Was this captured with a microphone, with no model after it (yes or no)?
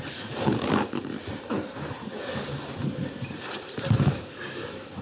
no